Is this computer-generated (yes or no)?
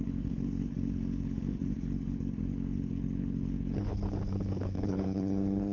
yes